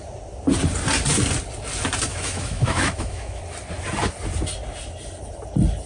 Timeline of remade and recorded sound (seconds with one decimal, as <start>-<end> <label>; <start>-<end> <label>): 0.0-2.1 recorded; 2.1-3.4 remade; 3.4-5.9 recorded